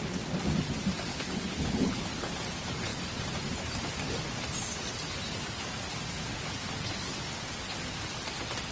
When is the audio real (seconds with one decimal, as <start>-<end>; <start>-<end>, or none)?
0.0-1.1; 2.3-8.7